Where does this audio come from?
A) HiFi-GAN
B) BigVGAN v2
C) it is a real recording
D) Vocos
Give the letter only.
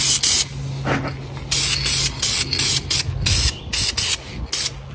C